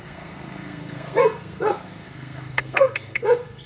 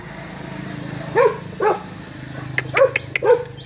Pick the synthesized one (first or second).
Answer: first